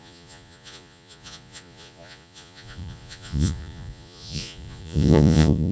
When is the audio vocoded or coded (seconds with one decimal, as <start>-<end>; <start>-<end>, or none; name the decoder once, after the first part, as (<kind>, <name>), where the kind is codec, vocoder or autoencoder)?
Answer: 0.0-5.7 (vocoder, Vocos)